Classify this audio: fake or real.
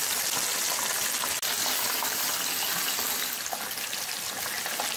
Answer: real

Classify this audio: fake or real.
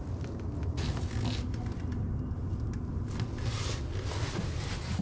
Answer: real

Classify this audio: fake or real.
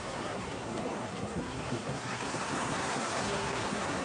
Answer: fake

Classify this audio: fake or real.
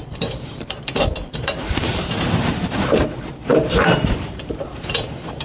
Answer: fake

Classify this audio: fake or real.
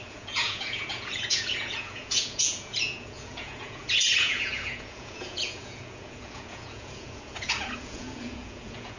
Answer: fake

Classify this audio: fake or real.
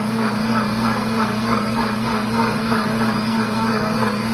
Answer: fake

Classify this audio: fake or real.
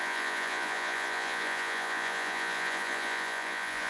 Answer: fake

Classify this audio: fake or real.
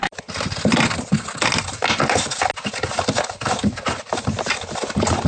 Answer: real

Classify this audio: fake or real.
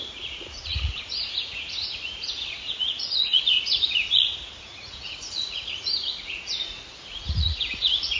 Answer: fake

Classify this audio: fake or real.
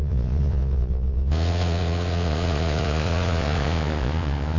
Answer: fake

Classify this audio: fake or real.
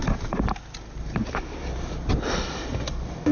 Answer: real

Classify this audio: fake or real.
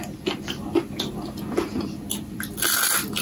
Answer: real